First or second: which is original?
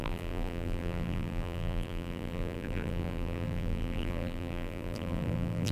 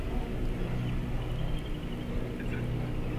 second